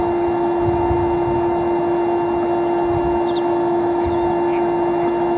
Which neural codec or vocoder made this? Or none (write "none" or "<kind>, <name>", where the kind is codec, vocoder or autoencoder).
none